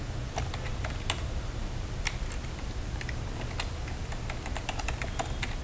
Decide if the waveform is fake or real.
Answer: real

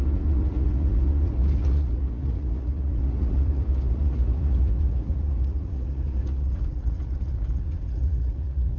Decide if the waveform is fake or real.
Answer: fake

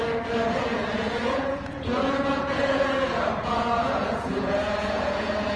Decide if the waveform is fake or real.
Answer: fake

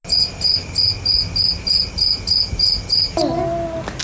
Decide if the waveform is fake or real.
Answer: real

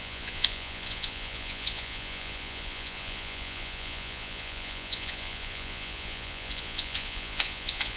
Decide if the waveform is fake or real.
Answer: fake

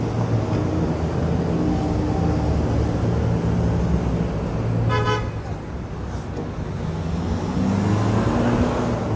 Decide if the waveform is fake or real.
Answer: real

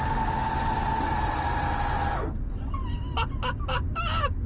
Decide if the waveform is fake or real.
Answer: real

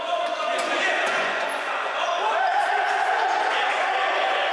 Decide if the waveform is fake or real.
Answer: fake